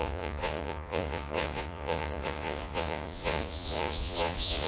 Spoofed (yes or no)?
yes